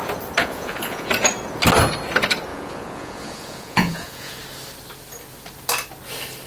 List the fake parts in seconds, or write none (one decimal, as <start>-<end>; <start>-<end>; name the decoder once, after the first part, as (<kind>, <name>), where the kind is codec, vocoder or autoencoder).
0.4-1.1 (vocoder, Vocos); 2.5-4.4